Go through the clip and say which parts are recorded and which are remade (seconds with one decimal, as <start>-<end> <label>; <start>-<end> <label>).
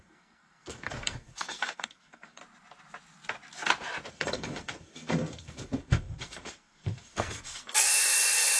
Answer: 0.0-2.4 remade; 2.4-4.1 recorded; 4.1-8.6 remade